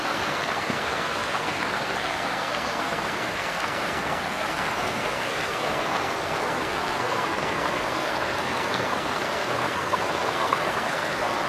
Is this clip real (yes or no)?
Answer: no